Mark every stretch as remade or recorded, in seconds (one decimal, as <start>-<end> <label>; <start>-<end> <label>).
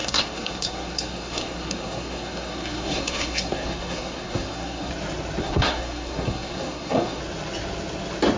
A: 0.0-4.9 remade; 4.9-5.4 recorded; 5.4-7.2 remade; 7.2-8.4 recorded